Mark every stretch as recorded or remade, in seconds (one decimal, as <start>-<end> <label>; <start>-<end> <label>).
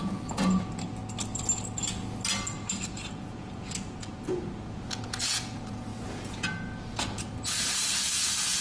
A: 0.0-1.0 remade; 1.0-2.5 recorded; 2.5-8.6 remade